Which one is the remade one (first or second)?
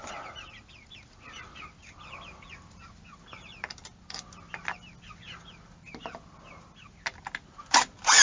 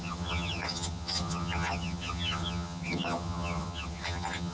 second